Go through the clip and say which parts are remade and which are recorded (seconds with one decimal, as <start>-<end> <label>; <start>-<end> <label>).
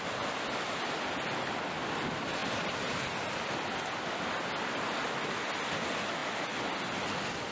0.0-7.5 recorded